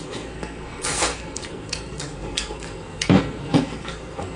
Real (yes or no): no